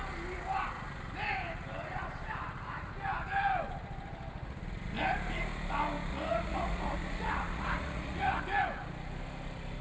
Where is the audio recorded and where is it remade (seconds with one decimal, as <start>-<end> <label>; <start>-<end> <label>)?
0.0-6.1 recorded; 6.1-8.4 remade; 8.4-9.8 recorded